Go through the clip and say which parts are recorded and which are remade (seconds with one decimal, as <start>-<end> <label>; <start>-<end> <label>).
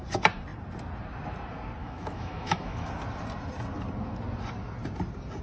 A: 0.0-1.8 recorded; 1.8-2.9 remade; 2.9-5.4 recorded